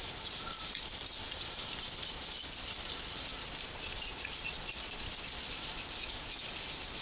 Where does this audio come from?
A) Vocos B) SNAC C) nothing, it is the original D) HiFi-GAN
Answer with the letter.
C